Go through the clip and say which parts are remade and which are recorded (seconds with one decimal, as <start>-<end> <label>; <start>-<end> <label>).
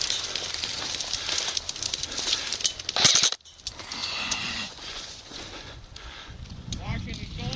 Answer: 0.0-4.0 recorded; 4.0-7.0 remade; 7.0-7.6 recorded